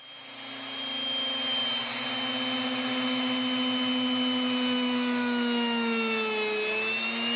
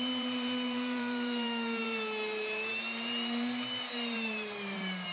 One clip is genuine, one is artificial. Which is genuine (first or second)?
first